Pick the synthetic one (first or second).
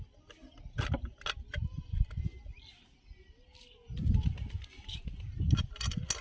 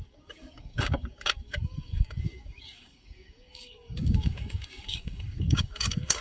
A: second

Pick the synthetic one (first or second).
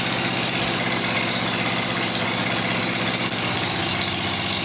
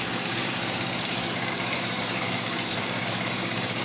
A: second